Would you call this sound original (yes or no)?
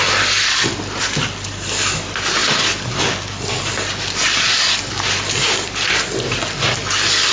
yes